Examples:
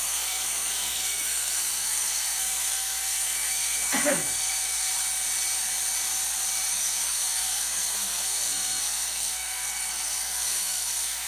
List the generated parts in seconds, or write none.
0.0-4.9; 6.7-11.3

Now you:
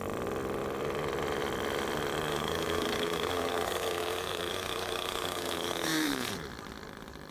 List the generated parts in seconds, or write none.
2.3-6.3

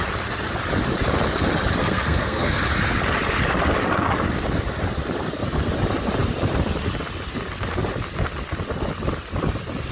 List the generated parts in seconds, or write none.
1.8-2.6

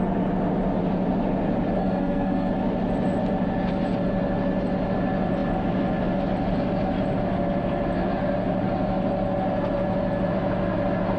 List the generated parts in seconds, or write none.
1.8-2.5

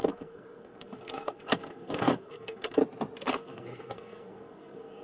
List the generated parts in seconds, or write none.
0.0-2.8; 3.3-5.0

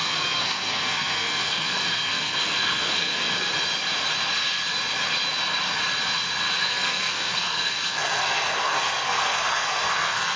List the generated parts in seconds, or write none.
0.0-3.5; 6.6-10.4

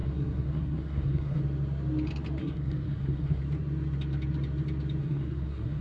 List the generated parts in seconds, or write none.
0.0-1.4; 2.4-3.4; 5.0-5.8

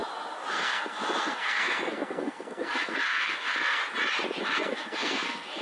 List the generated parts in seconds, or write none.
0.5-3.8; 4.4-5.6